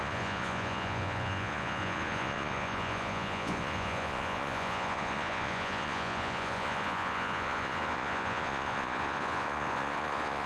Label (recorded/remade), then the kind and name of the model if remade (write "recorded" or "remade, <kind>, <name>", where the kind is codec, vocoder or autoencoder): remade, vocoder, Vocos